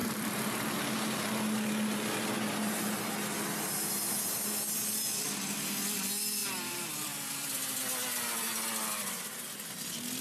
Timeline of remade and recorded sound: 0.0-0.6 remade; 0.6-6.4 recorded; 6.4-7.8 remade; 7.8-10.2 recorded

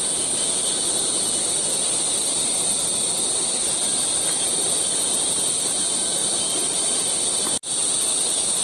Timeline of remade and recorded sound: 0.0-6.2 recorded; 6.2-7.4 remade; 7.4-8.6 recorded

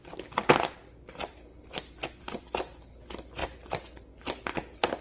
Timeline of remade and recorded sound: 0.0-5.0 recorded

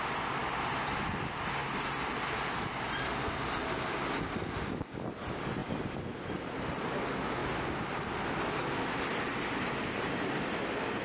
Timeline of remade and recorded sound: 0.0-0.4 recorded; 0.4-1.0 remade; 1.0-1.6 recorded; 1.6-2.7 remade; 2.7-5.6 recorded; 5.6-6.4 remade; 6.4-11.0 recorded

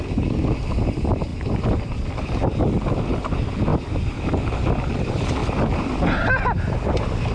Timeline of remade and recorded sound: 0.0-7.3 recorded

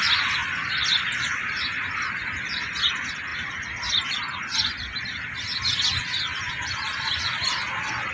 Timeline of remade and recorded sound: 0.0-0.4 recorded; 0.4-1.5 remade; 1.5-3.3 recorded; 3.3-3.9 remade; 3.9-8.1 recorded

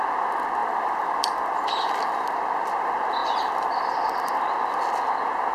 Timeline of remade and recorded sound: 0.0-0.6 recorded; 0.6-2.0 remade; 2.0-3.2 recorded; 3.2-4.4 remade; 4.4-5.5 recorded

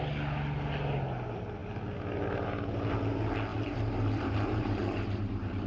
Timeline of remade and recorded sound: 0.0-3.5 recorded; 3.5-5.7 remade